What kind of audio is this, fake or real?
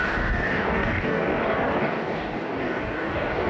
fake